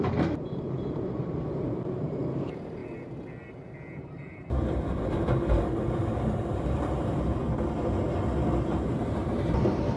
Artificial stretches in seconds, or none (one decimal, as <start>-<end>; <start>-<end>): 0.0-2.8; 4.0-7.4; 8.6-10.0